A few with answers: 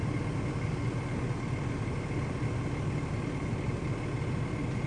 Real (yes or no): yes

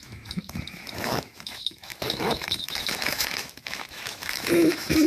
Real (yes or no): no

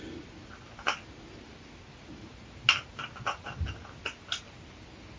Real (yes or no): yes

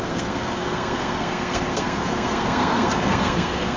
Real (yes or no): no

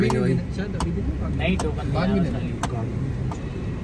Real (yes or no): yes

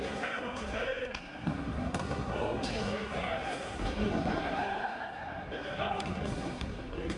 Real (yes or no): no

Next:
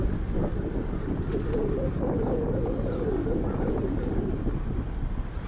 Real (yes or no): yes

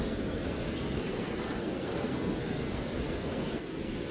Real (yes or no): no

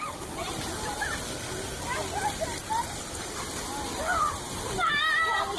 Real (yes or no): yes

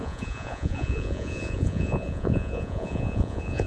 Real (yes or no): no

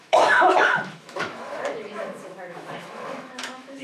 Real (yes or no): no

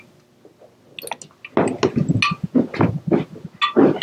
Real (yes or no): yes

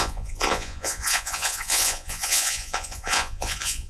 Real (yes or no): no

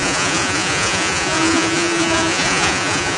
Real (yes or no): no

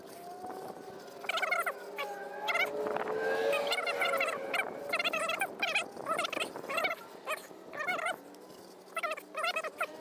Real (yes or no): yes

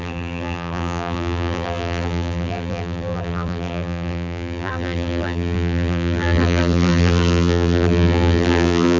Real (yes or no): no